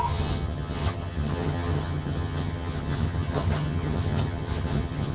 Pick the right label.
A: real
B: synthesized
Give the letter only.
B